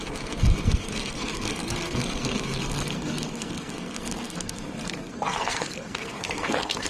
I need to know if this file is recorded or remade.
remade